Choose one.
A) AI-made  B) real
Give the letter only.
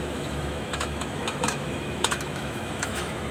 A